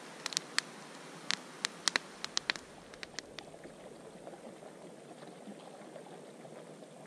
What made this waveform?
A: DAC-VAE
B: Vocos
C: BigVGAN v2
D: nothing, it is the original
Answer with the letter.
D